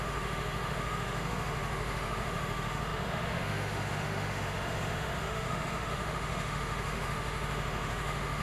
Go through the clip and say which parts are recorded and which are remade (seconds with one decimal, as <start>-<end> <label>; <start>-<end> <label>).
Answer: 0.0-8.4 remade